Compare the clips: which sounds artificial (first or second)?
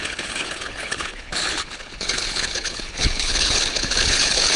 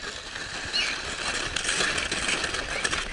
first